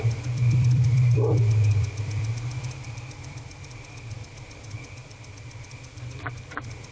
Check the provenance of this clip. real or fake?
fake